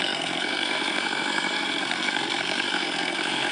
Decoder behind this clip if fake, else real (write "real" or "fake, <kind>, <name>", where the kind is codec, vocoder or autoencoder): fake, codec, SNAC